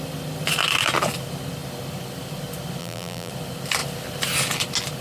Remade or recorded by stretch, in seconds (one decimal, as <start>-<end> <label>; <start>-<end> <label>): 0.0-2.8 recorded; 2.8-3.3 remade; 3.3-5.0 recorded